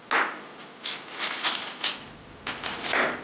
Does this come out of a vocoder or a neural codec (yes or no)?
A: no